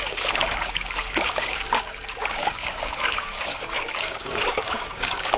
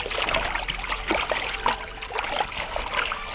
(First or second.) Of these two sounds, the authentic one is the second